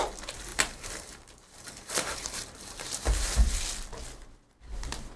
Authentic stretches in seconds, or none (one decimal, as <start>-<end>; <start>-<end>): 0.0-0.5; 3.6-5.2